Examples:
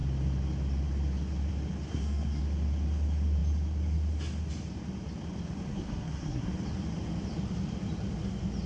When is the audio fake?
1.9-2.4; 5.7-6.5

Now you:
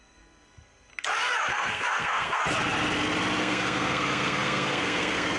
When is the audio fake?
0.0-0.9; 1.5-2.4; 3.4-5.4

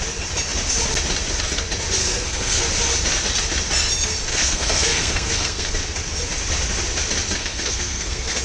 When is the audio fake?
2.0-2.6; 4.3-5.7; 7.4-8.4